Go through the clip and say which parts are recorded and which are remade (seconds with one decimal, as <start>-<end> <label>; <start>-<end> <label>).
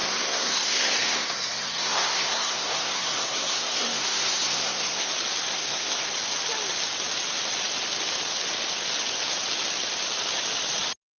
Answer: 0.0-5.1 remade; 5.1-5.5 recorded; 5.5-6.1 remade; 6.1-11.2 recorded